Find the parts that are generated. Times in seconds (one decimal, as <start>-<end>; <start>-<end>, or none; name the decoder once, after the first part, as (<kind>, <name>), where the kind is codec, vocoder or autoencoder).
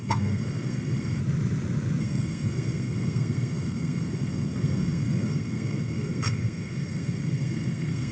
0.0-1.2 (codec, SNAC); 2.0-8.1